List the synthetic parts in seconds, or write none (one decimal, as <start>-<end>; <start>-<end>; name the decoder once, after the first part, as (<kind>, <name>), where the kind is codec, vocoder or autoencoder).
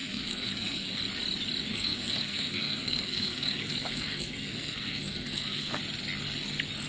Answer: 0.0-1.0 (codec, SNAC); 1.7-5.8